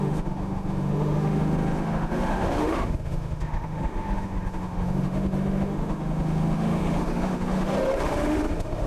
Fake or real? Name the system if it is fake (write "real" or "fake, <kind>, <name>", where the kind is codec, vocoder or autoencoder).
fake, autoencoder, DAC-VAE